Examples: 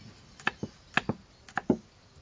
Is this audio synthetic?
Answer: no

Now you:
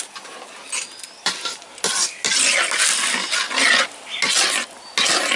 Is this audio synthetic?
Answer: no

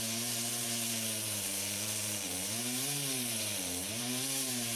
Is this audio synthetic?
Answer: yes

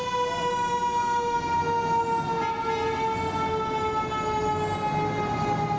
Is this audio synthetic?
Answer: no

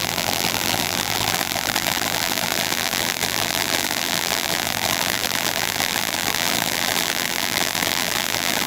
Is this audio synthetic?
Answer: yes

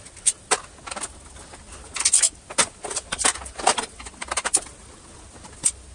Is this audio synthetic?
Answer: no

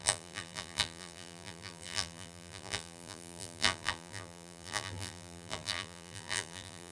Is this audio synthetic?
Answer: yes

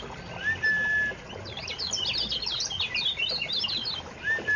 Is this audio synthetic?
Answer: no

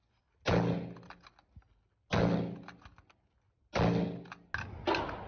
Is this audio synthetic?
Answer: no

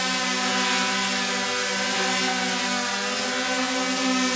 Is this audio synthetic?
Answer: no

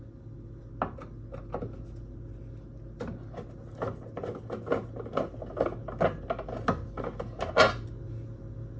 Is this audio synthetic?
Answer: no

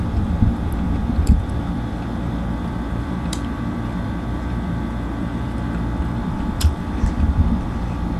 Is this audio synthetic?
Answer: yes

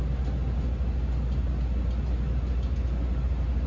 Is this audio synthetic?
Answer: no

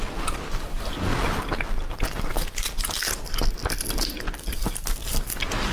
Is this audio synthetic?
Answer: no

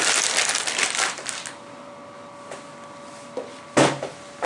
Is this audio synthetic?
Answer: no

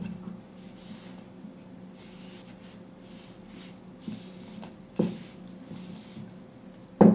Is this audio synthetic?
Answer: no